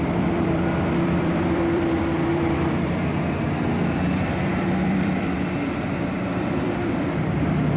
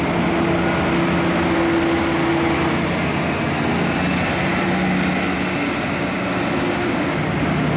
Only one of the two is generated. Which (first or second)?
first